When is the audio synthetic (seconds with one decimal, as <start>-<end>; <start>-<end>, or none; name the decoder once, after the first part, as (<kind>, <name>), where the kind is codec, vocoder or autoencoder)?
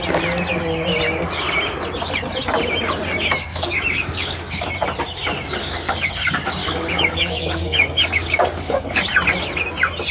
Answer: 3.5-4.7 (codec, DAC); 5.6-6.1; 6.6-9.0